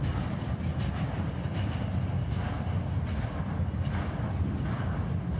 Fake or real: real